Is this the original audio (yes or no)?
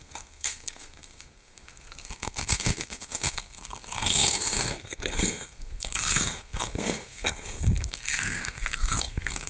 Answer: no